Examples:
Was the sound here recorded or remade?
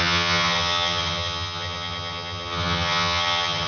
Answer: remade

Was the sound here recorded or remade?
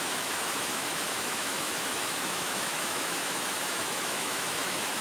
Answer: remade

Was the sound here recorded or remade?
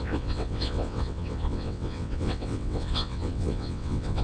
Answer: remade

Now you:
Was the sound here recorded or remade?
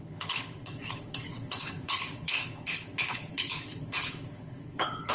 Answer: remade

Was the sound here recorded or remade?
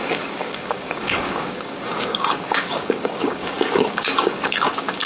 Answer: remade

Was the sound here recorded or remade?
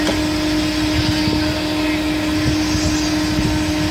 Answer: recorded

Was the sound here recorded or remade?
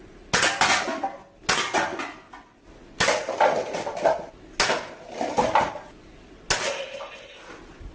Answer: recorded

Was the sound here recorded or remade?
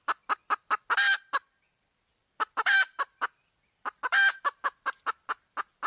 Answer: remade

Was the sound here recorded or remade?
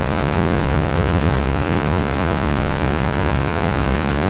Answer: remade